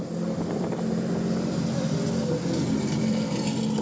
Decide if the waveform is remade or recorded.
recorded